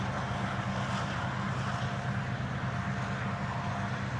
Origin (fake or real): real